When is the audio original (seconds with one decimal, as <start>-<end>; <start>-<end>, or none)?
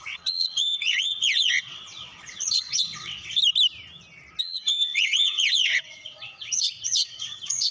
3.4-4.4